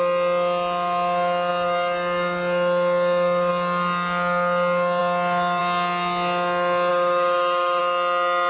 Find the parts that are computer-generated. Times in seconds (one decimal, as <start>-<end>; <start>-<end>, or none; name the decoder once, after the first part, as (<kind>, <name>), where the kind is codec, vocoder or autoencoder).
6.9-7.8 (autoencoder, DAC-VAE)